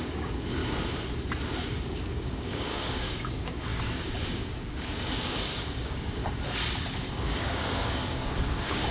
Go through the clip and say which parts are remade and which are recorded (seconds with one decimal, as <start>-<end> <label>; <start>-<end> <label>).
0.0-0.6 remade; 0.6-1.8 recorded; 1.8-6.2 remade; 6.2-7.1 recorded; 7.1-8.9 remade